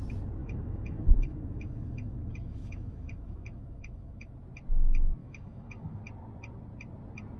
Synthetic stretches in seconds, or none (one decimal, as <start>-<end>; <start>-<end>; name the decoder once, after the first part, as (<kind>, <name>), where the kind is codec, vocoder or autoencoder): 0.4-4.3 (autoencoder, DAC-VAE); 5.2-6.0